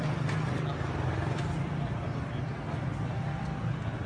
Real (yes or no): yes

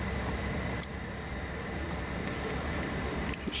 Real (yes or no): yes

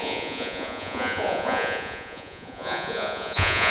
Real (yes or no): no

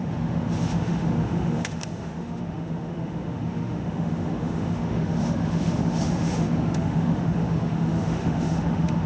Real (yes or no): no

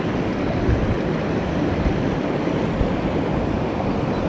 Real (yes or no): yes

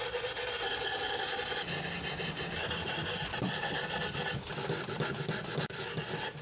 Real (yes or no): yes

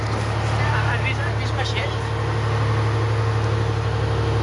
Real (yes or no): yes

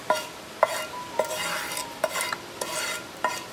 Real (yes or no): yes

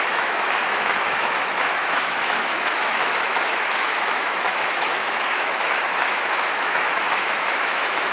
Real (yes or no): no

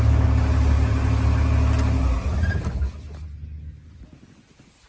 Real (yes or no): yes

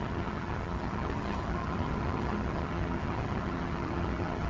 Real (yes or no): no